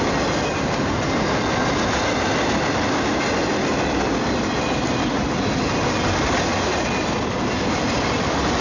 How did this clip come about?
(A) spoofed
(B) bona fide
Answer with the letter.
B